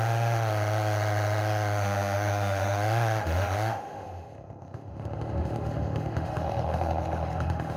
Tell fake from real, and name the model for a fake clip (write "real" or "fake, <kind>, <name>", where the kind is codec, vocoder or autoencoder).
fake, autoencoder, DAC-VAE